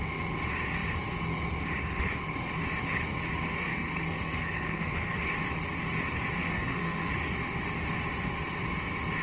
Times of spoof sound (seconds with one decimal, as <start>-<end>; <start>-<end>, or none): 3.6-5.3; 6.4-7.1